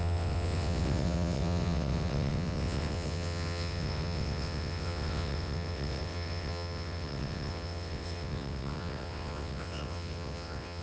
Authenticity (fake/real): fake